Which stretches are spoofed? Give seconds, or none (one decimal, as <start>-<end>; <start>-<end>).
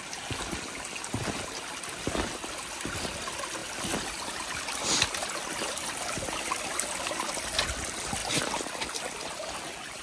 none